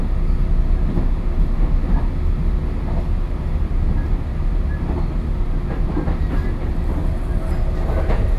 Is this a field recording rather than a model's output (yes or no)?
yes